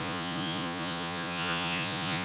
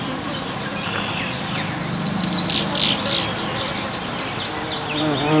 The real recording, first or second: second